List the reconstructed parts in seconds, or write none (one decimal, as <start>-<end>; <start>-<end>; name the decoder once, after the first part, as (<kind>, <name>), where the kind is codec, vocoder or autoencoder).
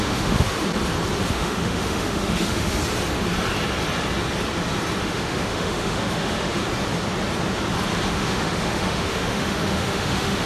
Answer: 0.0-0.5 (autoencoder, DAC-VAE); 1.3-2.8; 5.0-6.6; 8.1-10.5